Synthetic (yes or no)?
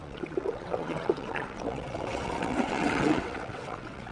yes